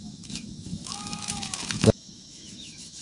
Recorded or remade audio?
remade